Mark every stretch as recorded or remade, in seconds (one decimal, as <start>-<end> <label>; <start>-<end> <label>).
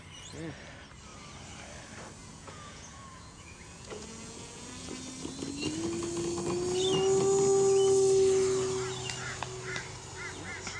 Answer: 0.0-2.2 recorded; 2.2-4.9 remade; 4.9-10.8 recorded